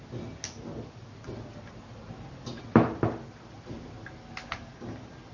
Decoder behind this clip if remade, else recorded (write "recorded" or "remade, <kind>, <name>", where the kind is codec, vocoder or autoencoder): recorded